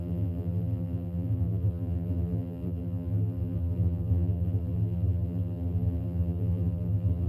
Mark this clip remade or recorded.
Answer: remade